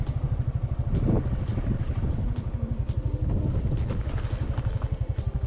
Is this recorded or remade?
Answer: recorded